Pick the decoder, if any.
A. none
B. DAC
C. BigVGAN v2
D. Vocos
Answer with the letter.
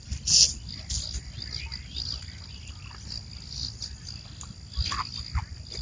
A